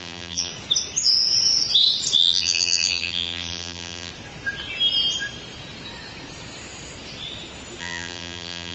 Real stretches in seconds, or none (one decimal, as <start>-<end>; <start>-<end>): 0.5-2.2; 4.1-7.8